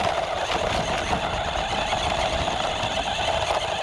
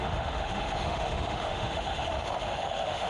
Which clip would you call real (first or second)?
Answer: first